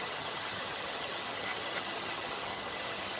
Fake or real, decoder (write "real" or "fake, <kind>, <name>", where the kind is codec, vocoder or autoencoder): fake, vocoder, HiFi-GAN